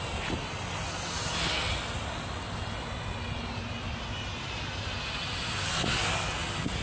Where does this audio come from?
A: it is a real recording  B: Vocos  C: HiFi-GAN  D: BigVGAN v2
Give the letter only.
A